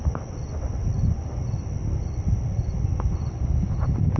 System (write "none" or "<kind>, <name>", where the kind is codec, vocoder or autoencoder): none